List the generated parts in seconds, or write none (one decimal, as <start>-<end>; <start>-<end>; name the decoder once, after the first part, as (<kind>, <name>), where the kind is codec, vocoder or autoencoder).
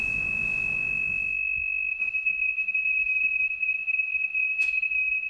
1.9-5.3 (vocoder, Vocos)